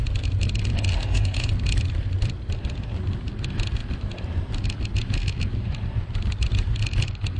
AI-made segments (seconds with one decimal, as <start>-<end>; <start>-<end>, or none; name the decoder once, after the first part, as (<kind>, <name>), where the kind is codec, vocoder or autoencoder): 1.0-1.5 (autoencoder, DAC-VAE)